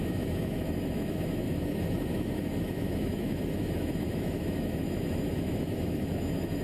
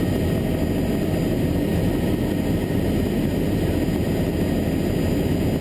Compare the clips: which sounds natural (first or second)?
second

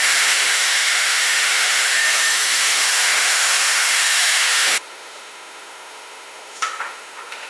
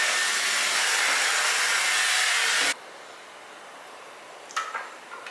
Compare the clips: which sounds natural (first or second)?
second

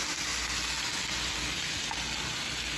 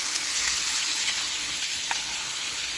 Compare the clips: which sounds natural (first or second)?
first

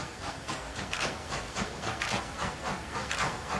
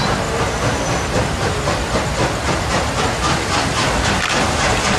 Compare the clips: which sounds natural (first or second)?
second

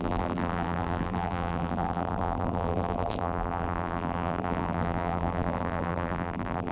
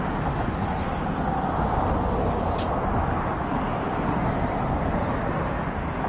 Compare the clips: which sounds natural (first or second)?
second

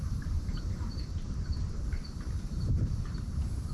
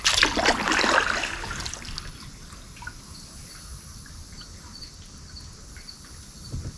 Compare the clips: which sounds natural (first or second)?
second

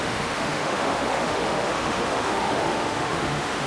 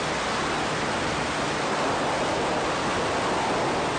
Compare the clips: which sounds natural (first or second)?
second